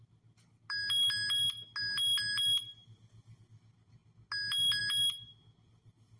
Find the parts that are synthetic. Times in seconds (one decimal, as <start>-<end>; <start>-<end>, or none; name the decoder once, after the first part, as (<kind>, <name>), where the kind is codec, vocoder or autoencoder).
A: none